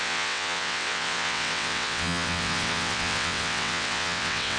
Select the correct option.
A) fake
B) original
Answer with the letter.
A